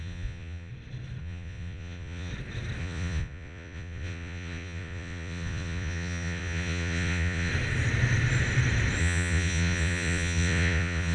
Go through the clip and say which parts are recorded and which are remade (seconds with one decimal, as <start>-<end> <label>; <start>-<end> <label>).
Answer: 0.0-0.7 remade; 0.7-1.2 recorded; 1.2-2.3 remade; 2.3-2.8 recorded; 2.8-7.5 remade; 7.5-9.0 recorded; 9.0-11.1 remade